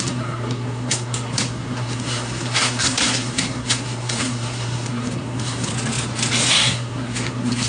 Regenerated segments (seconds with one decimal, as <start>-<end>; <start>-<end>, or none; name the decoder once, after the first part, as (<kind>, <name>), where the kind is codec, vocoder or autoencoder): 0.0-5.7 (codec, SNAC); 6.5-7.7